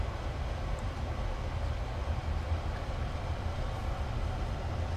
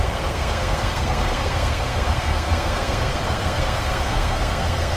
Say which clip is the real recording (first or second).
first